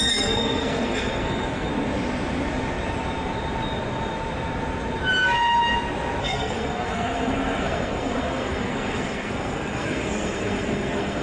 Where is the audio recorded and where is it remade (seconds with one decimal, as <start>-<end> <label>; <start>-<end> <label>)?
0.0-1.7 remade; 1.7-6.2 recorded; 6.2-11.2 remade